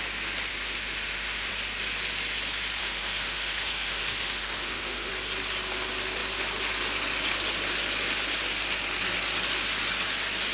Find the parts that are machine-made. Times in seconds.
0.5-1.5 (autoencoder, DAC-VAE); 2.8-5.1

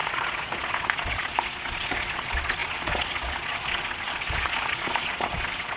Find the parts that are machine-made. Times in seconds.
0.0-5.8 (vocoder, Vocos)